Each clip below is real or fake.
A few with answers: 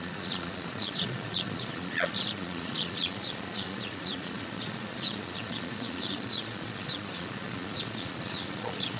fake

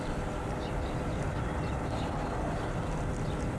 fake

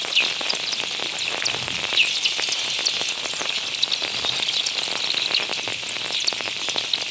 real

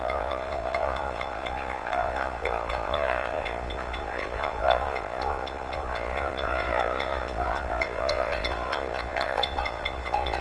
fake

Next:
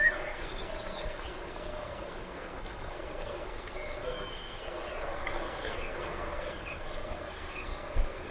fake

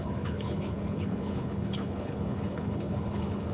fake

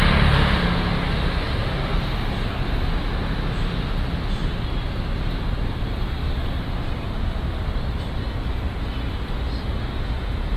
real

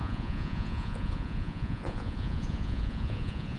fake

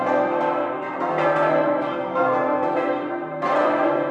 fake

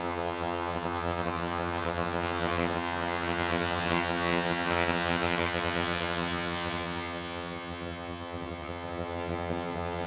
fake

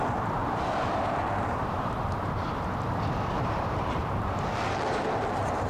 fake